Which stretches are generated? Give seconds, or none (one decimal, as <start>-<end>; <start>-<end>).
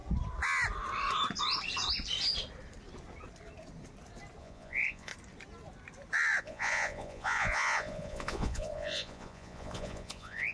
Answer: 4.4-5.1; 6.4-10.5